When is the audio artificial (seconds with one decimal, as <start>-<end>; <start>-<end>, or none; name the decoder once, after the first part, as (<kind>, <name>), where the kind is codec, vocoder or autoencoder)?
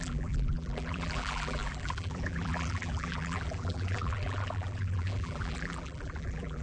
0.0-6.6 (vocoder, BigVGAN v2)